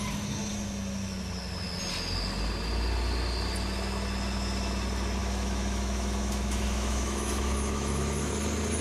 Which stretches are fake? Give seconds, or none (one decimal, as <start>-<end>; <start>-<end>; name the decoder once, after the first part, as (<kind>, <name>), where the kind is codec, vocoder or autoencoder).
5.2-8.3 (autoencoder, DAC-VAE)